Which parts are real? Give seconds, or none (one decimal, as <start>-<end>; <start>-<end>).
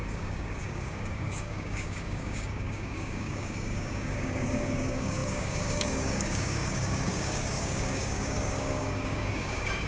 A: none